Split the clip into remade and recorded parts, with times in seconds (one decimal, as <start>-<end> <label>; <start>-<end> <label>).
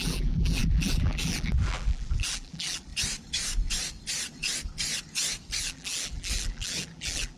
0.0-2.9 remade; 2.9-5.6 recorded; 5.6-7.4 remade